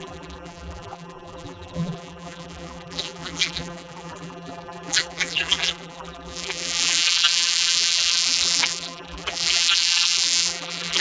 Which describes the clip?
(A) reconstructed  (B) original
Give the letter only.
A